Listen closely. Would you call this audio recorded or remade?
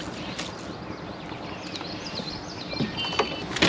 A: recorded